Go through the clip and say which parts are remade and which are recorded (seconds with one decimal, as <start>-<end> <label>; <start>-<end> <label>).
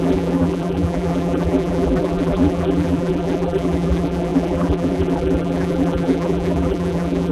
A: 0.0-7.3 remade